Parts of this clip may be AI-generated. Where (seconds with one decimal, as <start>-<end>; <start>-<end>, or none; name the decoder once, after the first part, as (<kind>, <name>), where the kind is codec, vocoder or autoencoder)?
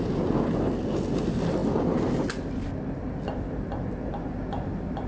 none